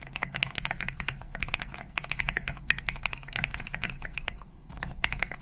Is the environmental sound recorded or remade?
remade